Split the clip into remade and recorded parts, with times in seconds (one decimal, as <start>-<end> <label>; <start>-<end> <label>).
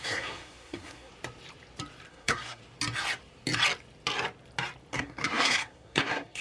0.0-1.1 remade; 1.1-2.1 recorded; 2.1-2.6 remade; 2.6-4.9 recorded; 4.9-6.4 remade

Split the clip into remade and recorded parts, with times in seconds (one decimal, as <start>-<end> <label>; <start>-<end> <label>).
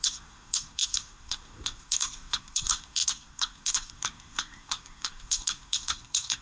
0.0-6.4 remade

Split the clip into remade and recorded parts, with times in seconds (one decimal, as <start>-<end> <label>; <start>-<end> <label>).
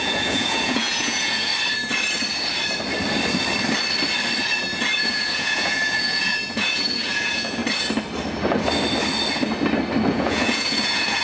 0.0-1.5 remade; 1.5-5.0 recorded; 5.0-7.6 remade; 7.6-10.1 recorded; 10.1-11.2 remade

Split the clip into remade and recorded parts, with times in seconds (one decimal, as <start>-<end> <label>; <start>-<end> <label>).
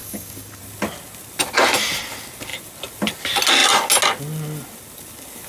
0.0-0.6 remade; 0.6-5.5 recorded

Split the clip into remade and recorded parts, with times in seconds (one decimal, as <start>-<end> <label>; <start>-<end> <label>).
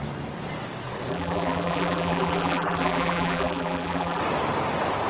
0.0-1.1 recorded; 1.1-4.2 remade; 4.2-5.1 recorded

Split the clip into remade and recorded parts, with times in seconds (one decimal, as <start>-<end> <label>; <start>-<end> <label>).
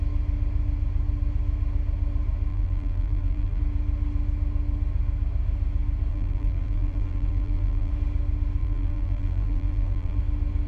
0.0-2.5 recorded; 2.5-3.6 remade; 3.6-6.1 recorded; 6.1-7.9 remade; 7.9-8.6 recorded; 8.6-10.2 remade; 10.2-10.7 recorded